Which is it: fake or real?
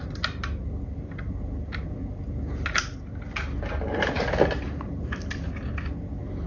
real